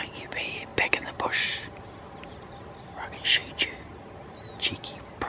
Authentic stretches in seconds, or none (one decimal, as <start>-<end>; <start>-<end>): 0.0-5.3